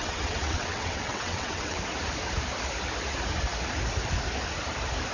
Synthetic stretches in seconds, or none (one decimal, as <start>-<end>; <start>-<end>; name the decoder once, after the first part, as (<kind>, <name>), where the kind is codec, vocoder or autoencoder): 0.0-1.8 (vocoder, WaveNeXt)